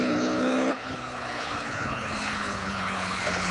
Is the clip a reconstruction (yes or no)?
yes